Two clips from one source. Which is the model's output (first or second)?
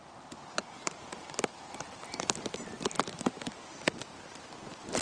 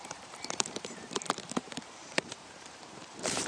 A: second